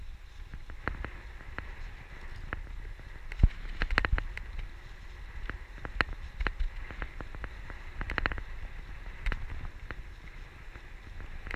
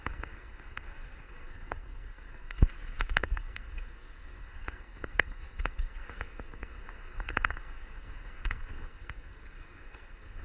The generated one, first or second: second